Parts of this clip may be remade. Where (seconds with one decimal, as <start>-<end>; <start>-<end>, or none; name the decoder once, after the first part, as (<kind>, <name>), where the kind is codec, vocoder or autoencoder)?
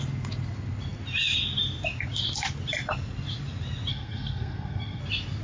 3.9-5.0 (codec, SNAC)